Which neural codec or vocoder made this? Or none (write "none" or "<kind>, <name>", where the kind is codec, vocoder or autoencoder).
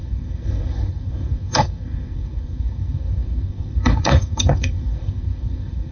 codec, SNAC